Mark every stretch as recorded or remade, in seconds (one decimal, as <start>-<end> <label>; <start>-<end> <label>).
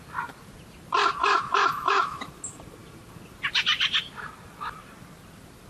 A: 0.0-1.2 recorded; 1.2-2.2 remade; 2.2-5.7 recorded